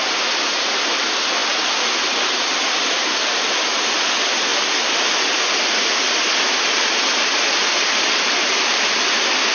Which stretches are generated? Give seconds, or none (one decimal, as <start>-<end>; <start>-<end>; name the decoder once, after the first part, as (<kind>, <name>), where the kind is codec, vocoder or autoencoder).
none